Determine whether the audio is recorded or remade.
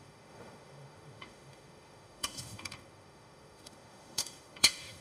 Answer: remade